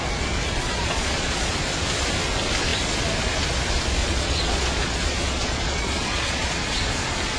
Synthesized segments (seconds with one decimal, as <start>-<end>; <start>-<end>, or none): 0.6-1.5; 4.0-6.9